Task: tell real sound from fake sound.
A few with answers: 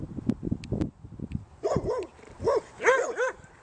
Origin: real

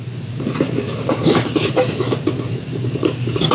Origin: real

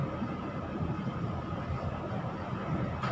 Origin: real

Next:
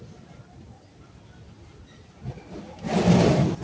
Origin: real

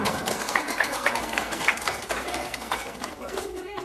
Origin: fake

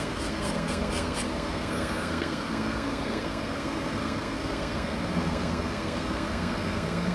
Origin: fake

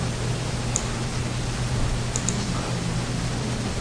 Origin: real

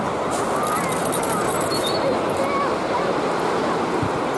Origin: real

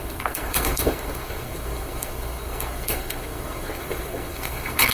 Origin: fake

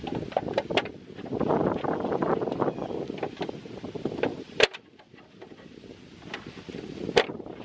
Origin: real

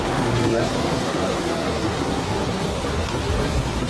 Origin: fake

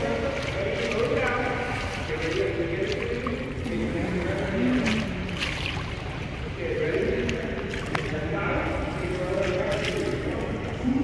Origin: real